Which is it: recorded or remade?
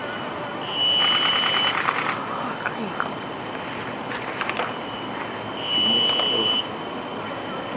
recorded